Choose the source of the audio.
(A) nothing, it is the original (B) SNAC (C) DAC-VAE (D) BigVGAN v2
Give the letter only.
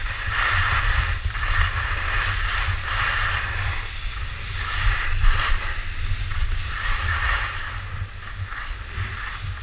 A